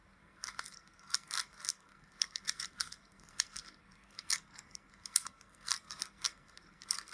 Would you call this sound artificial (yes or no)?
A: yes